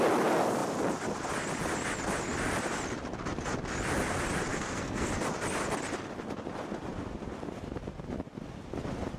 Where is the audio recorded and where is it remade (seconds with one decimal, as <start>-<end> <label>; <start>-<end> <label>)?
0.0-4.5 recorded; 4.5-5.1 remade; 5.1-9.2 recorded